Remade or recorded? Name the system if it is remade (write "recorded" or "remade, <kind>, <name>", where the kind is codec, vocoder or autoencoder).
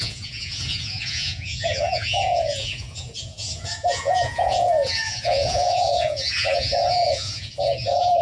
remade, vocoder, Vocos